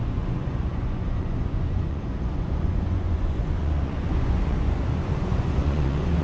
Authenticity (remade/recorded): remade